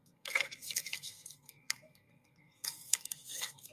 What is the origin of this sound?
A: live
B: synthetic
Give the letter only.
B